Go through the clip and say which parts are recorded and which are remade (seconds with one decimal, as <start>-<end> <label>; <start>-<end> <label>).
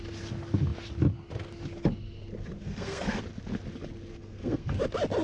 0.0-2.6 recorded; 2.6-3.2 remade; 3.2-4.1 recorded; 4.1-4.8 remade; 4.8-5.2 recorded